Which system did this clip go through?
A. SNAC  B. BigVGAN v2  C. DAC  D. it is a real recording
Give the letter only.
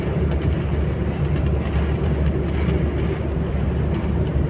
D